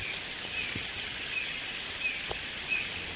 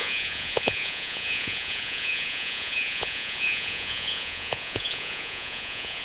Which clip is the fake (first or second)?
second